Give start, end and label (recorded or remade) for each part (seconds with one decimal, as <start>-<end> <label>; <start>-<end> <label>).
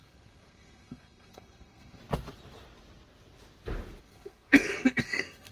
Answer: 0.0-2.0 remade; 2.0-4.0 recorded; 4.0-5.5 remade